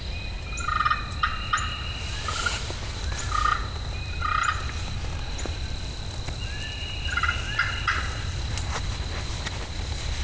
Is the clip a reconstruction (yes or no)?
no